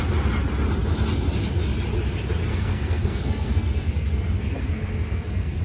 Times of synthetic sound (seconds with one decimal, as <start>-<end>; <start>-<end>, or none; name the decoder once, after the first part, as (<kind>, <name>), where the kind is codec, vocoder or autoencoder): 2.5-5.6 (codec, SNAC)